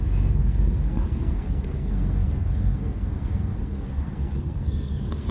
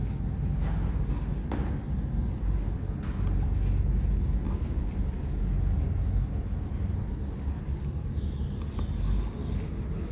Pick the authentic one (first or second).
second